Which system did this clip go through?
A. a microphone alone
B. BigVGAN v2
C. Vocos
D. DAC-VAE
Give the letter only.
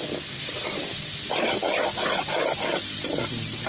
A